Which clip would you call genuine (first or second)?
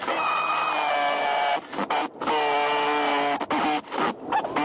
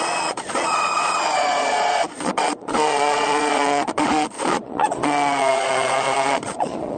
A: first